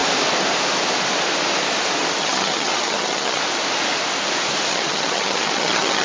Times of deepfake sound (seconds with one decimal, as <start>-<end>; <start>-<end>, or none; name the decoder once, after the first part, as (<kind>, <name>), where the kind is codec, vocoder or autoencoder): 2.2-3.4 (vocoder, HiFi-GAN); 4.7-6.0